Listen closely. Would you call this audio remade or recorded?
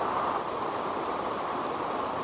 recorded